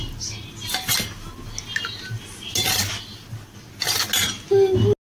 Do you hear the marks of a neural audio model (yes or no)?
no